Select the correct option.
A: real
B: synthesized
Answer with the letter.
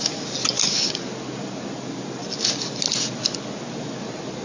A